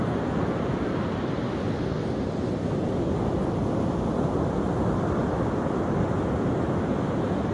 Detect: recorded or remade recorded